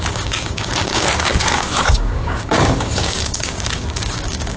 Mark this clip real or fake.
fake